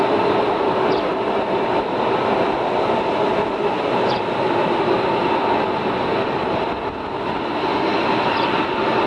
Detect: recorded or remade recorded